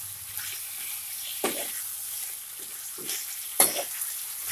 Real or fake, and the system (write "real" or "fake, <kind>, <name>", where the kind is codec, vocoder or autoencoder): real